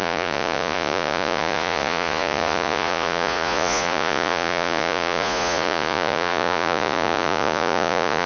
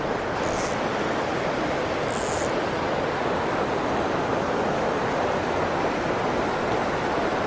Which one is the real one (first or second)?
second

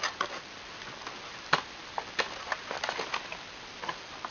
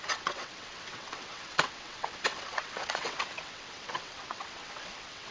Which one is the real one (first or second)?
first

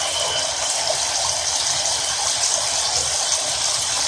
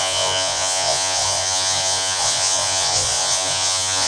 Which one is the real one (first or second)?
first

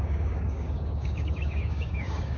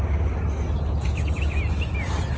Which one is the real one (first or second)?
second